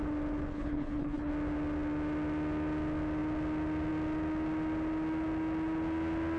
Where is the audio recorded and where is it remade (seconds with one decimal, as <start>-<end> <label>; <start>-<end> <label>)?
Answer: 0.0-0.5 recorded; 0.5-1.3 remade; 1.3-6.4 recorded